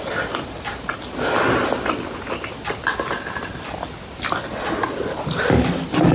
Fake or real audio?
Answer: real